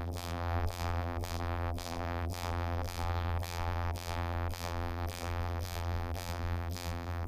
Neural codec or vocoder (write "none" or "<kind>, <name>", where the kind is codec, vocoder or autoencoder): vocoder, BigVGAN v2